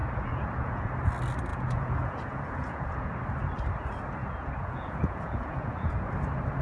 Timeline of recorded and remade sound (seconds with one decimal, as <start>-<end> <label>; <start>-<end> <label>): 0.0-0.9 remade; 0.9-1.5 recorded; 1.5-3.1 remade; 3.1-4.2 recorded; 4.2-6.1 remade; 6.1-6.6 recorded